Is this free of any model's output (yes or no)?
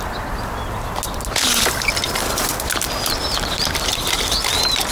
yes